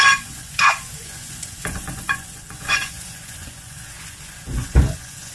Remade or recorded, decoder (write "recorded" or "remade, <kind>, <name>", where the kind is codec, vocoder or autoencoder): remade, vocoder, Vocos